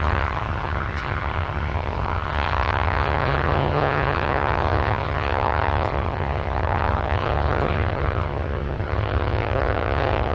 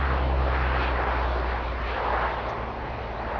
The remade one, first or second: first